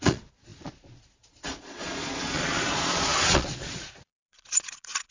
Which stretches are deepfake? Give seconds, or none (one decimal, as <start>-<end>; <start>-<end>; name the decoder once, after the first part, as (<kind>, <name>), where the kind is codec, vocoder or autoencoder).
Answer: 0.0-5.1 (vocoder, Vocos)